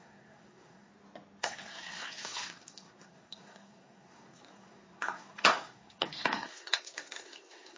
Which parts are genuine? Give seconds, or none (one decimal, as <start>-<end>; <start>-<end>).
0.9-1.4